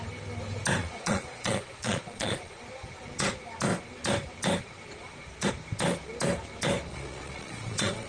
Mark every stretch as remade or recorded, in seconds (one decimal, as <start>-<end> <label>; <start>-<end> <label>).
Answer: 0.0-0.8 recorded; 0.8-2.6 remade; 2.6-6.9 recorded; 6.9-8.1 remade